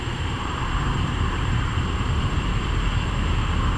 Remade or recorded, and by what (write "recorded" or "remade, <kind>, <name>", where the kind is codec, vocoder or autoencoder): remade, vocoder, BigVGAN v2